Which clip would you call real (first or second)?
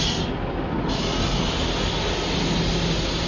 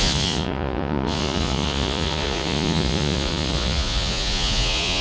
first